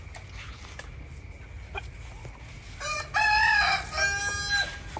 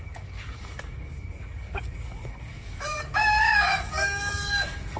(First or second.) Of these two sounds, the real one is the first